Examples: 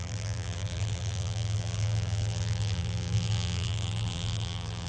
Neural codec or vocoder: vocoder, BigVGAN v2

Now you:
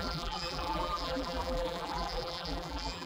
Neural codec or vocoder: vocoder, BigVGAN v2